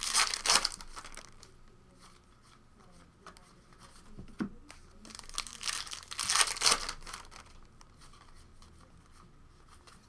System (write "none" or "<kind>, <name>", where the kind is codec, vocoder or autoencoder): none